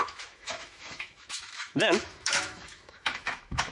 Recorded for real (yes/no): no